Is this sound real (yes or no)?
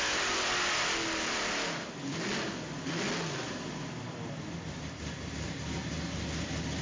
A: yes